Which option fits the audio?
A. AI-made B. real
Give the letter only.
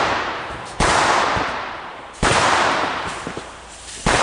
A